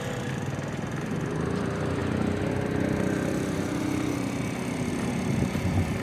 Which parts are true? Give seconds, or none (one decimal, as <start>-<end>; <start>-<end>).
2.0-4.9